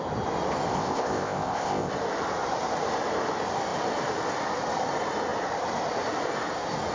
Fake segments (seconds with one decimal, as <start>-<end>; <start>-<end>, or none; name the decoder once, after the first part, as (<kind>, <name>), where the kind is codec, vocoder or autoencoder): 0.7-1.9 (codec, ZipCodec)